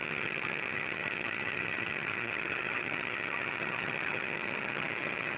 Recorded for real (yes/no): no